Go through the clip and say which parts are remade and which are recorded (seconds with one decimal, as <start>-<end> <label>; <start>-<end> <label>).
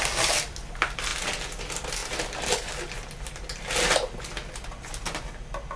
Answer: 0.0-5.8 recorded